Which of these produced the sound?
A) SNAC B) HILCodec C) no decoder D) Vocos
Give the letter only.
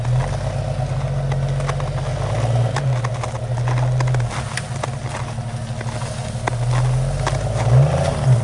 C